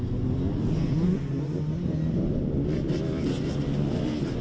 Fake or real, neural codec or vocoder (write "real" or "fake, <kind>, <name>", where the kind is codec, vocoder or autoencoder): real